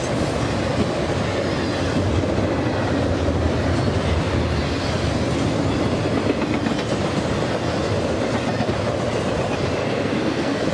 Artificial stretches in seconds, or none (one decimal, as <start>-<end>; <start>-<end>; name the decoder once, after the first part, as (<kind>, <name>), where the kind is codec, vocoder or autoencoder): 9.8-10.7 (codec, SNAC)